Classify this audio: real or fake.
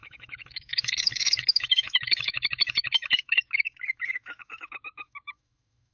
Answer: fake